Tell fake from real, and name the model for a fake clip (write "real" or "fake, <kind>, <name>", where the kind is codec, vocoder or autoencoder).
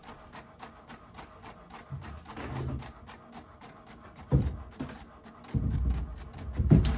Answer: real